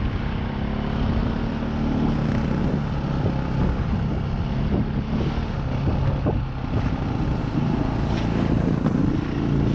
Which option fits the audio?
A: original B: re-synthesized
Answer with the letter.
A